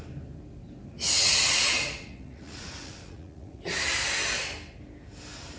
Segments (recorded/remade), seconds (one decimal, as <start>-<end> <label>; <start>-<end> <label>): 0.0-1.2 recorded; 1.2-3.6 remade; 3.6-5.6 recorded